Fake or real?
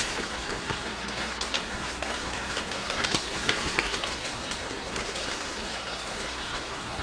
fake